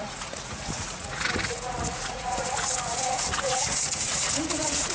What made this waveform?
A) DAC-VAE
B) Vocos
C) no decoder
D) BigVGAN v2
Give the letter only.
B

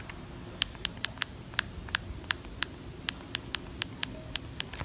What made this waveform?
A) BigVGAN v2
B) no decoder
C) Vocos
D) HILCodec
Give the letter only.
B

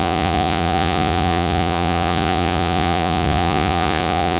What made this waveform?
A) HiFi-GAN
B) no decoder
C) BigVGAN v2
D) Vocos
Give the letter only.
D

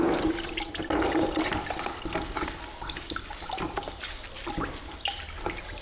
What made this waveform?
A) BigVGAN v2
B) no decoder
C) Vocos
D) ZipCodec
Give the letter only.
B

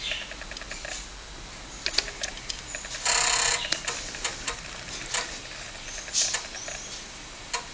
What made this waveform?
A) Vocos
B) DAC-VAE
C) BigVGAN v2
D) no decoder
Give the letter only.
D